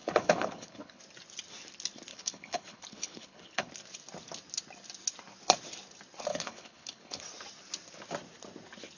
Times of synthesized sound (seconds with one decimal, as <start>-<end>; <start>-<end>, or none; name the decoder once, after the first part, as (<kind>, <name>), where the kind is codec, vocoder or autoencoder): 0.0-1.0 (codec, HILCodec); 2.1-3.7; 6.3-7.2